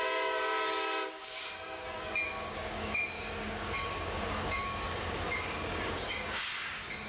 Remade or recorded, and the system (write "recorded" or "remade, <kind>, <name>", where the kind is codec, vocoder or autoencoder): remade, codec, DAC